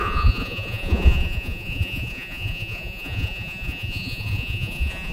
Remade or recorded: remade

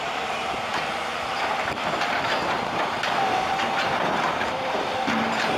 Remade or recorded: remade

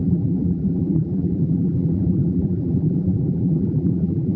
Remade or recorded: remade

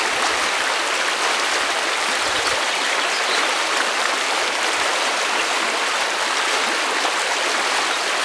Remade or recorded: recorded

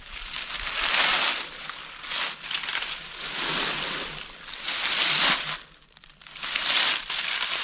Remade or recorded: recorded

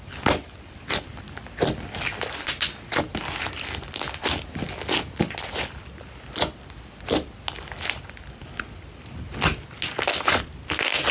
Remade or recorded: recorded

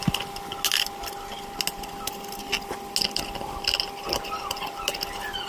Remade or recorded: recorded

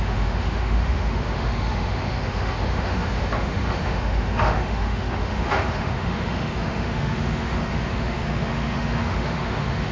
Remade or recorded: remade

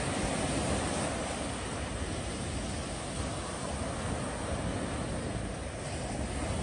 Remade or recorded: recorded